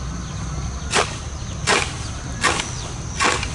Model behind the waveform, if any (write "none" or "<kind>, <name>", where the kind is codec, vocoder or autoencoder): none